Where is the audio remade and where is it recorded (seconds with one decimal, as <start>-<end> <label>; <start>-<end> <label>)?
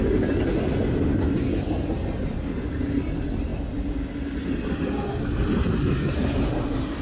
0.0-7.0 recorded